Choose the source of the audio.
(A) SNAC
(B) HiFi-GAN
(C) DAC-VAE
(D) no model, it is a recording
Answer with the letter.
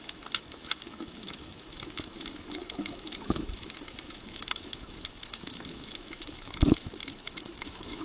C